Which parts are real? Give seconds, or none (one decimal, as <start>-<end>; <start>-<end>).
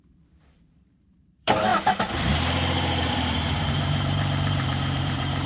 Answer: none